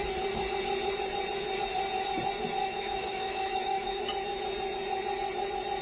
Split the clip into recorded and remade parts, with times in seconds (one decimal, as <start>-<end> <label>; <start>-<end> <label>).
0.0-2.6 recorded; 2.6-4.0 remade; 4.0-5.8 recorded